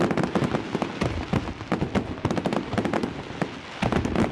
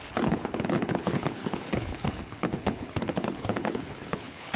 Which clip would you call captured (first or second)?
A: first